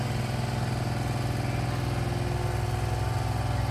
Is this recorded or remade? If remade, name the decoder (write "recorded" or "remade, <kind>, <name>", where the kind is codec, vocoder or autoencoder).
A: recorded